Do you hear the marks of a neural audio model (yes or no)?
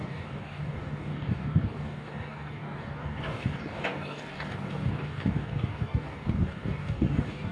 yes